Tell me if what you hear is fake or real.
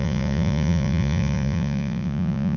fake